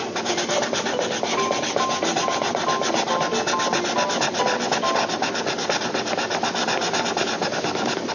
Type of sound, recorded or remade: recorded